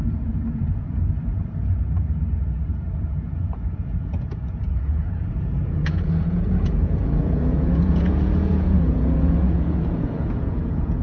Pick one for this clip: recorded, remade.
remade